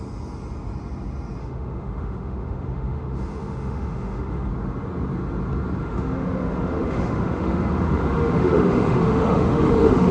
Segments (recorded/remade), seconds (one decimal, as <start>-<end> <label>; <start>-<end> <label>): 0.0-1.4 recorded; 1.4-4.5 remade; 4.5-5.8 recorded; 5.8-10.1 remade